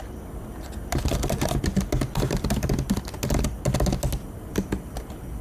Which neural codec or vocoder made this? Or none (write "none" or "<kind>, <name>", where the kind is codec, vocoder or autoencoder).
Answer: none